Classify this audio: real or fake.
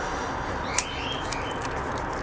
real